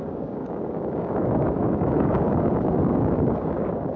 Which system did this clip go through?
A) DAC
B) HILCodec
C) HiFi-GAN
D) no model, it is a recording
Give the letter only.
A